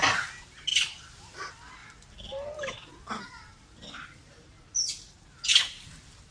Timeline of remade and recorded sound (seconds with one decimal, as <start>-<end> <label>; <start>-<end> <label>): 0.0-6.3 recorded